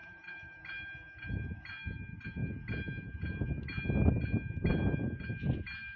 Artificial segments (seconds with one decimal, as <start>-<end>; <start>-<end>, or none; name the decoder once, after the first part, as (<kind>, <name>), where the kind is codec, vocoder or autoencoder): 0.0-0.6 (vocoder, BigVGAN v2)